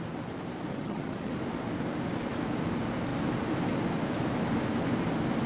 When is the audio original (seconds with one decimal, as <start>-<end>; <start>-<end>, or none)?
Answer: 0.0-0.7; 1.3-5.5